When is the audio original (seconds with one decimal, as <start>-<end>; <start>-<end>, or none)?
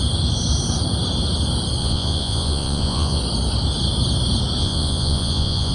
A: 0.0-1.8; 3.2-4.6